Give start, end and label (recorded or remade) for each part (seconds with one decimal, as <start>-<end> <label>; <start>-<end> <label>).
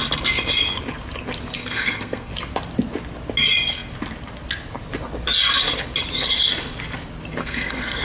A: 0.0-1.6 recorded; 1.6-2.3 remade; 2.3-7.4 recorded; 7.4-8.0 remade